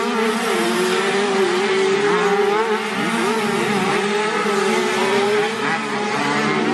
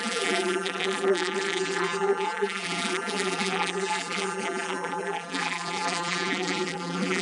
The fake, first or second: second